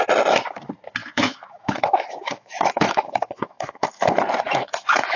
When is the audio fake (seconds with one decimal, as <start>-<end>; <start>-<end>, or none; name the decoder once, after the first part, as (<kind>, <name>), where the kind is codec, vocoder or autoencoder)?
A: 1.0-4.1 (autoencoder, DAC-VAE); 4.5-5.2